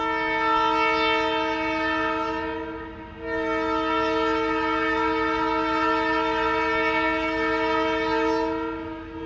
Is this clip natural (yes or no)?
yes